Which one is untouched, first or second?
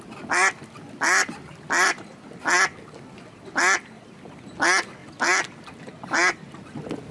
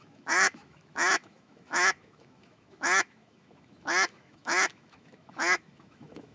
first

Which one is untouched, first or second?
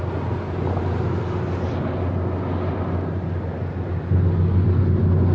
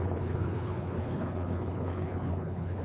first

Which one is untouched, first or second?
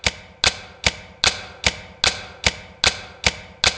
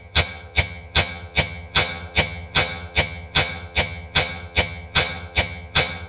first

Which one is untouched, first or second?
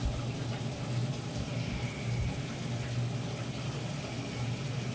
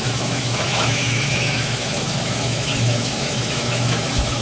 first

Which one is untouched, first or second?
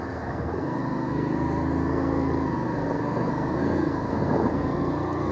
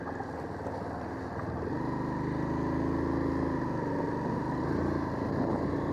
second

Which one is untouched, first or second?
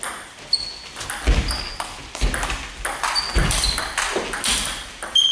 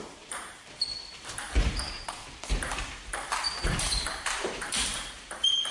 first